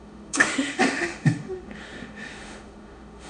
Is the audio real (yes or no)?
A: no